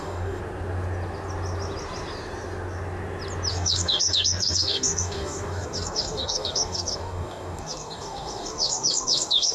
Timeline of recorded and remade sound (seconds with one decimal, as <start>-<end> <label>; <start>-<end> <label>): 0.0-0.4 remade; 0.4-3.5 recorded; 3.5-9.5 remade